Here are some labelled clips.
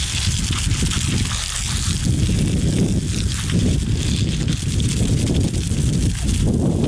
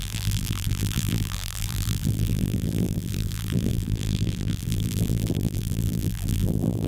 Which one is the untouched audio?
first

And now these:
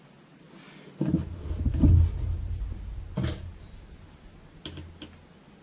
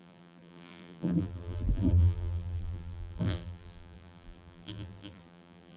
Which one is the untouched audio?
first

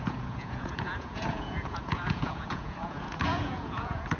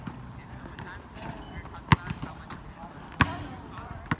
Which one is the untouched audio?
second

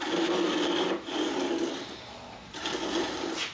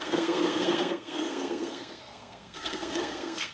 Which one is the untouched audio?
first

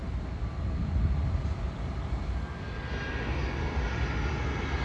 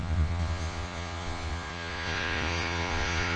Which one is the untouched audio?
first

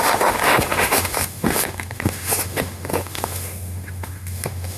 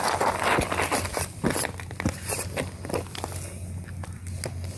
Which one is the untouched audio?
second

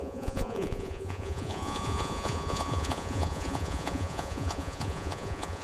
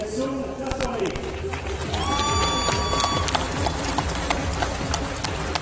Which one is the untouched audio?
second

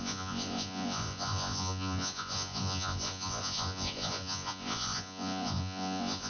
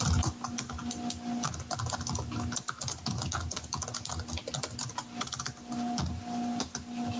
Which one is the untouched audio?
second